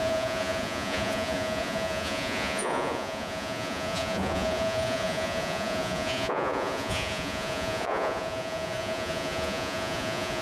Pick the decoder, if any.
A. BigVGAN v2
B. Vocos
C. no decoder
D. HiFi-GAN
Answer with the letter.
B